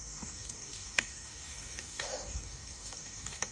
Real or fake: fake